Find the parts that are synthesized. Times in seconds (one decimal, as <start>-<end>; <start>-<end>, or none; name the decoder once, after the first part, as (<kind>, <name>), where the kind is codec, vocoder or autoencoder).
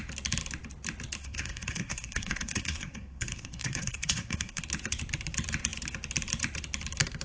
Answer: 1.2-4.6 (codec, SNAC)